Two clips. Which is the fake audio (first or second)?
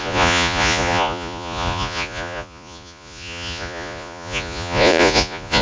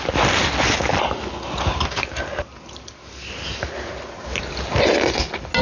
first